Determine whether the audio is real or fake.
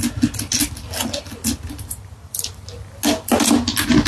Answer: real